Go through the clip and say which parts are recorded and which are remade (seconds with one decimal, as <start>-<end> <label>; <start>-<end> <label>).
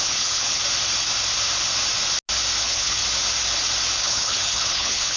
0.0-0.6 remade; 0.6-2.6 recorded; 2.6-3.0 remade; 3.0-4.0 recorded; 4.0-5.2 remade